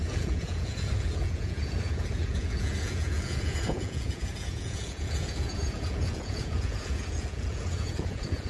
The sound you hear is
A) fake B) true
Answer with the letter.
A